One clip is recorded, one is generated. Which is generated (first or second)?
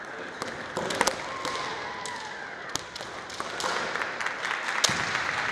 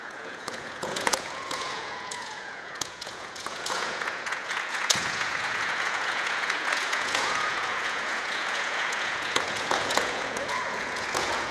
second